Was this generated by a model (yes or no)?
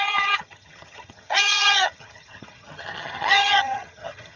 yes